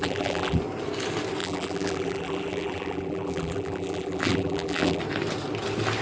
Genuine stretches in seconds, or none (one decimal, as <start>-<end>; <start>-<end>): 0.6-1.4; 5.0-6.0